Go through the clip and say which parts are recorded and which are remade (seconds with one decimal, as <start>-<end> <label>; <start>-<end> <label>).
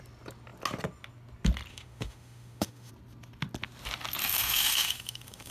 0.0-1.7 recorded; 1.7-2.9 remade; 2.9-4.2 recorded; 4.2-5.5 remade